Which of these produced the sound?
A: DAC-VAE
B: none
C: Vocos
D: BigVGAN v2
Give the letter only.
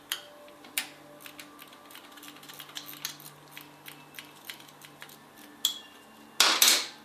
B